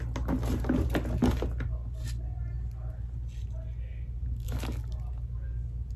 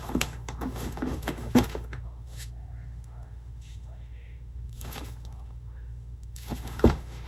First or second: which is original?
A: first